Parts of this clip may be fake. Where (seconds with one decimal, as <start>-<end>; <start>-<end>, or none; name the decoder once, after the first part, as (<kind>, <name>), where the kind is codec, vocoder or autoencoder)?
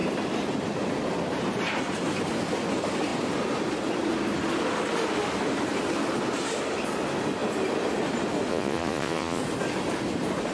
8.5-9.4 (vocoder, Vocos)